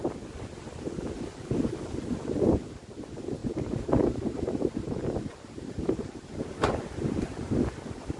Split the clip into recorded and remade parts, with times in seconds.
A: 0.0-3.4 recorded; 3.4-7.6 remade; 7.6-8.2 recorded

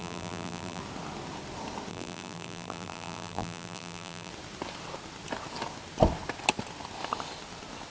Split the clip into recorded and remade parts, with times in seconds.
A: 0.0-0.8 remade; 0.8-1.9 recorded; 1.9-4.3 remade; 4.3-7.9 recorded

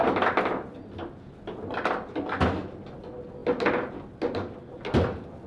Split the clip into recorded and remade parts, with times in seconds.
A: 0.0-5.5 recorded

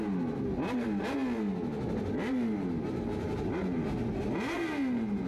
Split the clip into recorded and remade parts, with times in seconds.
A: 0.0-5.3 recorded

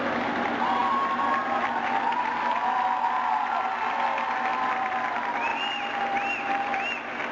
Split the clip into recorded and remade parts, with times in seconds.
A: 0.0-4.5 recorded; 4.5-5.1 remade; 5.1-5.5 recorded; 5.5-6.0 remade; 6.0-7.3 recorded

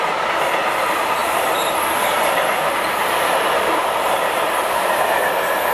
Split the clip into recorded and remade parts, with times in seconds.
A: 0.0-1.2 recorded; 1.2-4.6 remade; 4.6-5.7 recorded

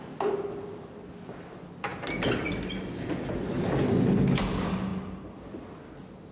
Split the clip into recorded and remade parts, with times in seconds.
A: 0.0-6.3 recorded